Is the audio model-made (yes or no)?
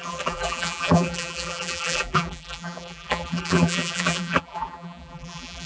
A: yes